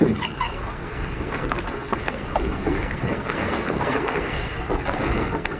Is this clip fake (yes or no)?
yes